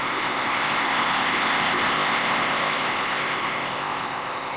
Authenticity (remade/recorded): remade